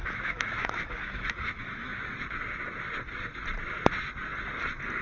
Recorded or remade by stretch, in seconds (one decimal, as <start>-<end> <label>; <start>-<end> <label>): 0.0-2.0 remade; 2.0-5.0 recorded